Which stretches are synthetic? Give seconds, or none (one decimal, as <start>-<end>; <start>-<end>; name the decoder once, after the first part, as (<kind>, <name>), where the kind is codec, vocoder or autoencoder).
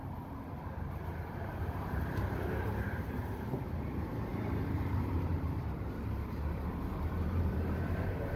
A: 1.3-8.4 (vocoder, BigVGAN v2)